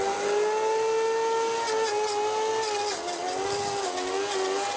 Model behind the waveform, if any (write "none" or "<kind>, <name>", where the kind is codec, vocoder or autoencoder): none